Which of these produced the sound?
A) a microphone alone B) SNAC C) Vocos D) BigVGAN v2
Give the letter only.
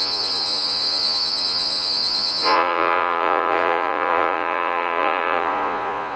C